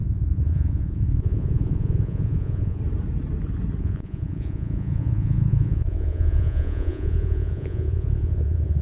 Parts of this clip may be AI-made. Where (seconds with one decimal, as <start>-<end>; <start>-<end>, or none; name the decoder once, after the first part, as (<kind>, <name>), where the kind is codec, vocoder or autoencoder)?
0.0-2.8 (vocoder, Vocos); 3.8-8.8